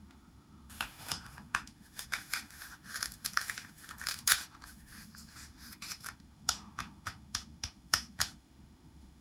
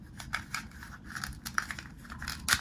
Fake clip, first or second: first